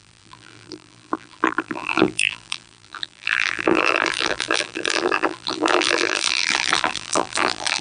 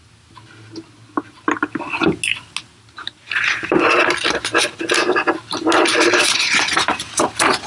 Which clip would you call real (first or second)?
second